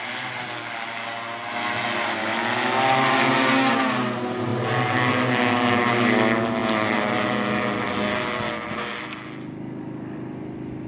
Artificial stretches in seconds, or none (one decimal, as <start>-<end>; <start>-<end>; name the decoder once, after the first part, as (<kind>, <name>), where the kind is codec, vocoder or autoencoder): none